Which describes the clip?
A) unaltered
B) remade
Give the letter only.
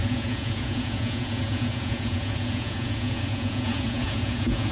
B